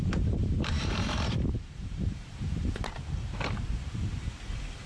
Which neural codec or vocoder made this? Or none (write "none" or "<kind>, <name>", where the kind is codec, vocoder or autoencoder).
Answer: vocoder, BigVGAN v2